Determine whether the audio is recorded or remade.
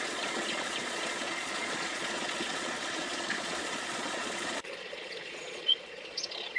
remade